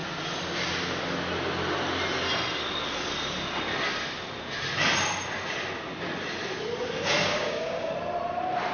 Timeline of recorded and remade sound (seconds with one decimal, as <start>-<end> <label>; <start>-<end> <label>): 0.0-7.2 recorded; 7.2-7.9 remade; 7.9-8.7 recorded